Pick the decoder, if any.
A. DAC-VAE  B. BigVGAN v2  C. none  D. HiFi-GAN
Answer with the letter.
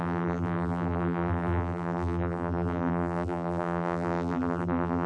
B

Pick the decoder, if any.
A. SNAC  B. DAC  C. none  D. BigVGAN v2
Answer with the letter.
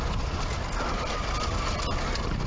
C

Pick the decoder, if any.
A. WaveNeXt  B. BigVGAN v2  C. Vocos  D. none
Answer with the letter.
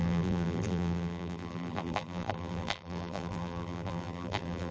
B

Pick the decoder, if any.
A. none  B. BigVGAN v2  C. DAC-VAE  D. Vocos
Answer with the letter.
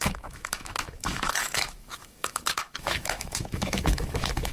C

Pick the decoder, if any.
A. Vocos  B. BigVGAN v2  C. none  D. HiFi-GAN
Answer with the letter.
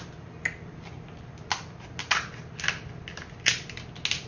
C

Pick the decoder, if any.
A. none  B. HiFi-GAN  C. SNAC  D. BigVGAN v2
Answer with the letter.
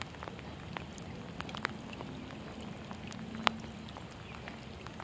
A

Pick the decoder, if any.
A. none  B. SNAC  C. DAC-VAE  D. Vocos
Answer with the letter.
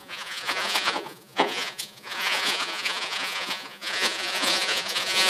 D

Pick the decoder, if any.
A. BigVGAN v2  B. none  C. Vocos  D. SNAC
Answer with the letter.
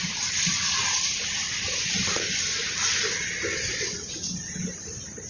B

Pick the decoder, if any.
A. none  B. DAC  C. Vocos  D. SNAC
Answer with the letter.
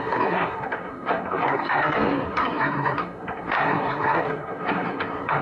D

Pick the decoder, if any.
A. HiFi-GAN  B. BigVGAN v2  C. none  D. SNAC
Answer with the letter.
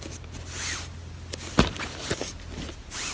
C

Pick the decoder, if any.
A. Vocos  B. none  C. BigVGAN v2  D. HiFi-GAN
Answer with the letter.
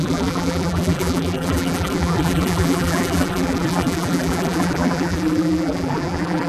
C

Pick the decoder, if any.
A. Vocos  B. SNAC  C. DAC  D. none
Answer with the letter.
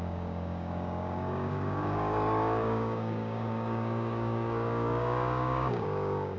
C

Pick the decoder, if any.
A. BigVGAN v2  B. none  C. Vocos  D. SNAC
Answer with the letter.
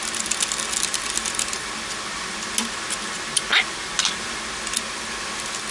B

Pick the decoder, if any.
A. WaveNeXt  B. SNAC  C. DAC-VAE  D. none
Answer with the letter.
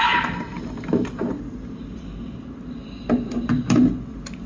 D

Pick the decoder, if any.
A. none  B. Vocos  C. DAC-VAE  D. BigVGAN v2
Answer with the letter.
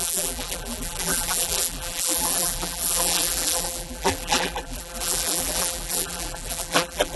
D